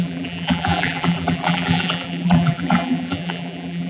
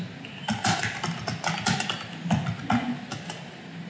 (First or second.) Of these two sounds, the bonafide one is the second